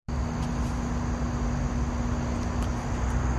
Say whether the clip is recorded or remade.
recorded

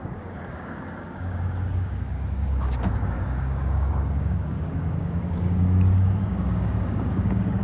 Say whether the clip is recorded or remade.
remade